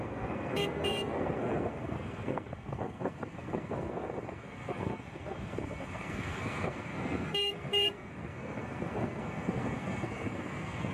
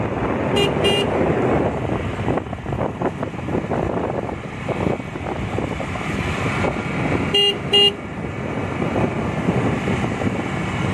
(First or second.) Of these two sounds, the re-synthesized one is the first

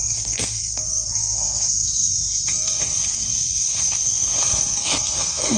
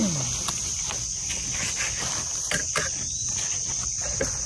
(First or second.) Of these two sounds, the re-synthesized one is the first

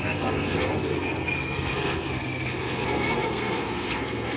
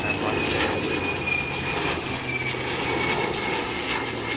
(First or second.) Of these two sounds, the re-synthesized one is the first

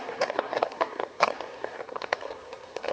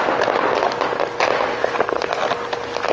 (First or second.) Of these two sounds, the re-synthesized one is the first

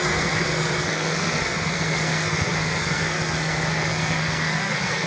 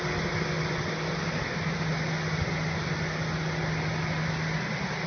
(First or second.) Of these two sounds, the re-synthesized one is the first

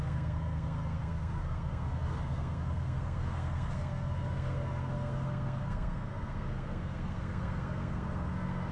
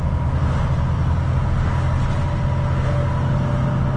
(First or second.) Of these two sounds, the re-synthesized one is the first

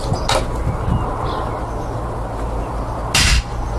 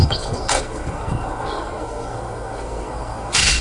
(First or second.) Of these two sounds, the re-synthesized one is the second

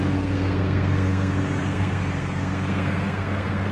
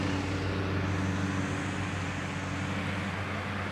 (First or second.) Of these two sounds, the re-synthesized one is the first